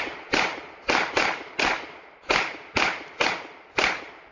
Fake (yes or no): no